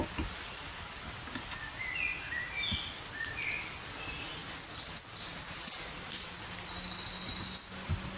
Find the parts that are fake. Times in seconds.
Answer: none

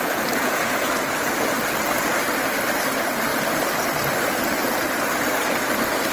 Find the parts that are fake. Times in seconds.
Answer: 0.4-0.9 (vocoder, Vocos)